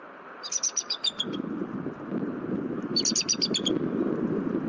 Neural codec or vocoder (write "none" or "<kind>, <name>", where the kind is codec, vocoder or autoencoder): none